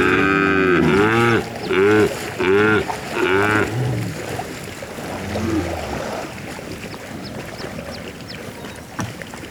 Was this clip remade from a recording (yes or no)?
no